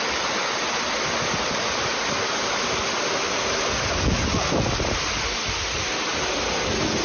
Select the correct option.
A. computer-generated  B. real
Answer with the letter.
B